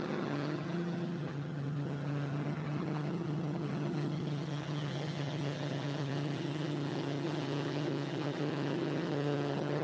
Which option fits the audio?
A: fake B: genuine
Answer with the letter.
A